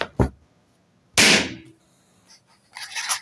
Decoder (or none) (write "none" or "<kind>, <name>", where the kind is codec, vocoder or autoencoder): none